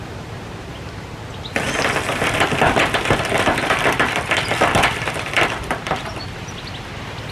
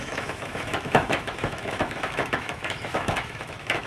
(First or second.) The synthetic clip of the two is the second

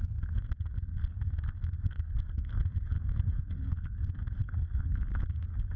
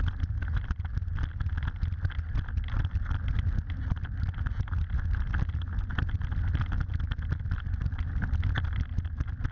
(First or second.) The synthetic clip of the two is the first